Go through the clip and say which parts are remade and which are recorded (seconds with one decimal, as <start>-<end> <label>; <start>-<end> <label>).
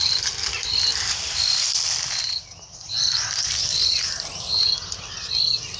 0.0-5.8 recorded